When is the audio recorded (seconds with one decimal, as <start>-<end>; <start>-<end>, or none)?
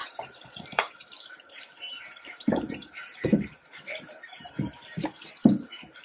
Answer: none